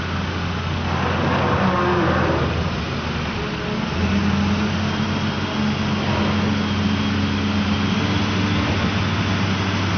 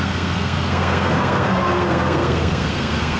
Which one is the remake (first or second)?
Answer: second